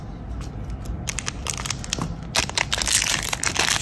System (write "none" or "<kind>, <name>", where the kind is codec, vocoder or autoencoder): none